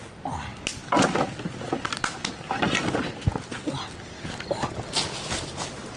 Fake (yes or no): no